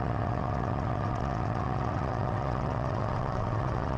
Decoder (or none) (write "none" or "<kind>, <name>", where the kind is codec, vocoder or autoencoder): vocoder, WaveNeXt